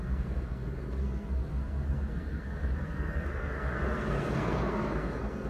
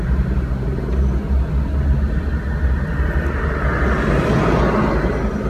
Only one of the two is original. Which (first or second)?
second